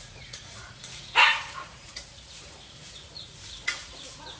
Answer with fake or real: fake